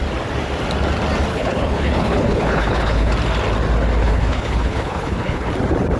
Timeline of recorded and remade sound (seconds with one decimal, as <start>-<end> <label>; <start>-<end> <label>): 0.0-1.3 recorded; 1.3-3.1 remade; 3.1-4.0 recorded; 4.0-5.5 remade; 5.5-6.0 recorded